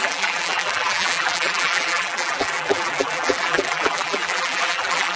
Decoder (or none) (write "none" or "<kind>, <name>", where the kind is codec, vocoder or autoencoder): vocoder, BigVGAN v2